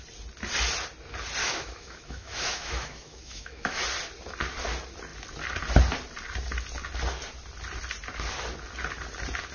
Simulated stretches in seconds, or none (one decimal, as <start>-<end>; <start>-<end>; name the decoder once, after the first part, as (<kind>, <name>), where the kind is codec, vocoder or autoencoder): 1.4-3.8 (autoencoder, DAC-VAE)